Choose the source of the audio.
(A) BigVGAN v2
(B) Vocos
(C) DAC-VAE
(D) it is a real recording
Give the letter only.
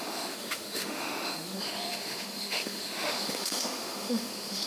C